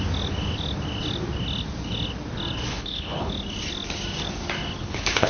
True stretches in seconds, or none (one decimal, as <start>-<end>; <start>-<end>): 0.0-2.7; 3.3-4.8